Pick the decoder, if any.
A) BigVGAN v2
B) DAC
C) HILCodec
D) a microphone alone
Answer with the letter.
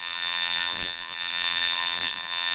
A